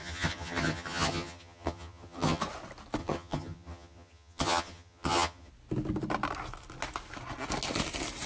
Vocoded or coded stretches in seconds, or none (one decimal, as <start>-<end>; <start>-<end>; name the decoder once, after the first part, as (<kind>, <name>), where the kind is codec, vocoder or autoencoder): 0.0-2.4 (vocoder, HiFi-GAN); 3.0-5.5